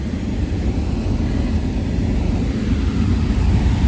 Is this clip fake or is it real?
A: real